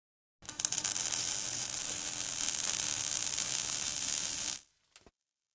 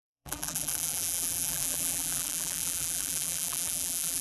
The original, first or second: first